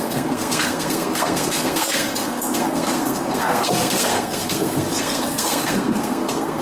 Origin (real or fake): fake